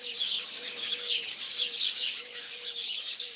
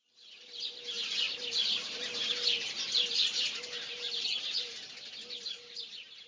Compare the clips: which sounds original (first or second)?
second